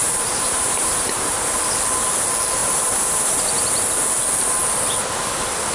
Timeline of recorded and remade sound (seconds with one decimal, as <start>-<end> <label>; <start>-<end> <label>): 0.0-1.6 remade; 1.6-2.6 recorded; 2.6-3.4 remade; 3.4-5.7 recorded